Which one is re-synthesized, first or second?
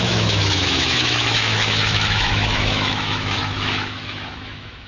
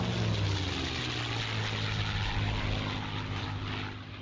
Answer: first